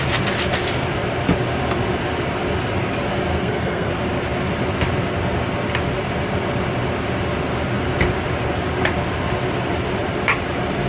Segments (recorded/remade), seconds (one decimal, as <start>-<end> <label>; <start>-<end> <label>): 0.0-3.3 recorded; 3.3-3.9 remade; 3.9-10.9 recorded